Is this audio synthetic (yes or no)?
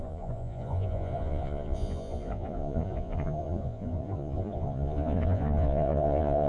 yes